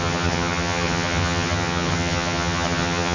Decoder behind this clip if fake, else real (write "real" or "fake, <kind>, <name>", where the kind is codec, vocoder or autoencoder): fake, vocoder, HiFi-GAN